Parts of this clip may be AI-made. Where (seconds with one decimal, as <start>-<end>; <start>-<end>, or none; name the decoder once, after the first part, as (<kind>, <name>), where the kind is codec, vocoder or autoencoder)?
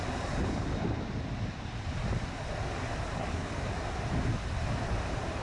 3.2-3.6 (codec, HILCodec)